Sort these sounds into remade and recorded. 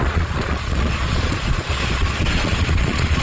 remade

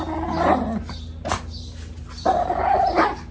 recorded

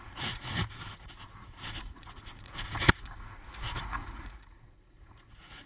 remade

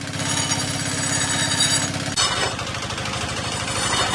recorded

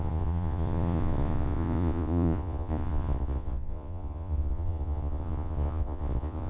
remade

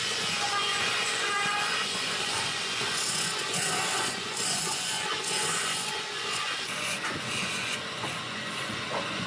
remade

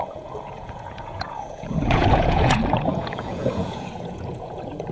remade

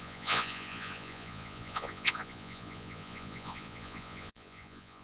remade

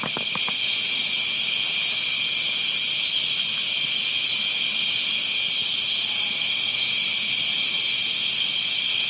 recorded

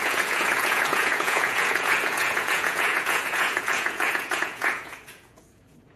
remade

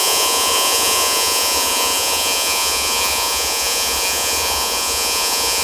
remade